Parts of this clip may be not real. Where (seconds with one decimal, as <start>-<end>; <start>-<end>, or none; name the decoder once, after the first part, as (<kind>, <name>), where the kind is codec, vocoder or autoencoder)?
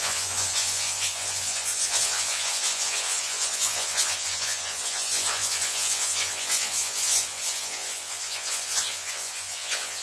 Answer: 0.0-10.0 (vocoder, Vocos)